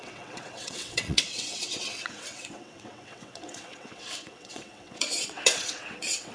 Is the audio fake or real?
fake